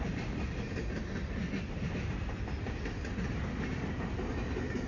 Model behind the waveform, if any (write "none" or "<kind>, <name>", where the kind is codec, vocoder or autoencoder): none